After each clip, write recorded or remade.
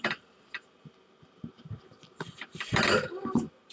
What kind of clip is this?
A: recorded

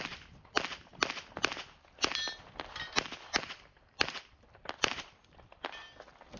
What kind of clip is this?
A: recorded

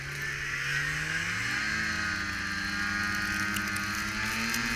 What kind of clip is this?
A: recorded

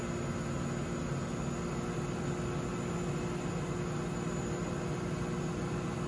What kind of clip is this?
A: recorded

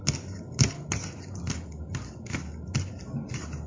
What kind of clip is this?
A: recorded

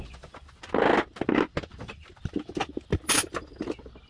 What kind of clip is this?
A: recorded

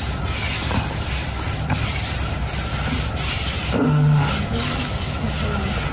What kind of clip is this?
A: recorded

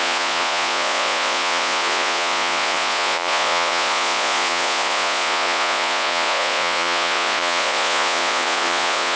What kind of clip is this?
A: remade